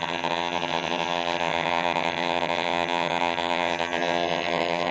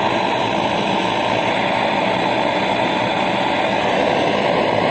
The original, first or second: second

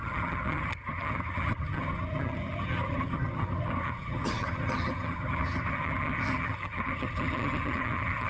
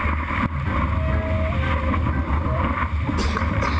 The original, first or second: second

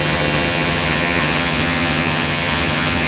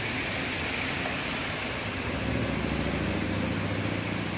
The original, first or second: second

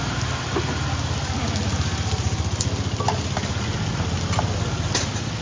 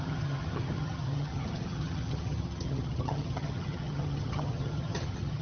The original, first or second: first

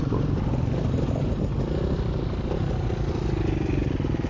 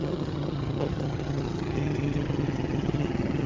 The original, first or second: first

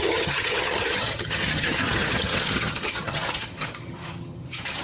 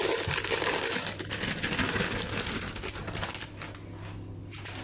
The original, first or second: second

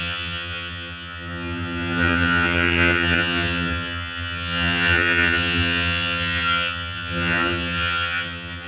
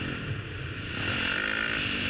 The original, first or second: second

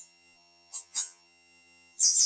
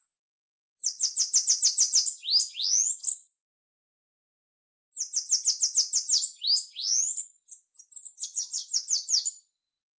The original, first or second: second